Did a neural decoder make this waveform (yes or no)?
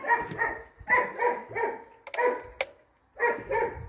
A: no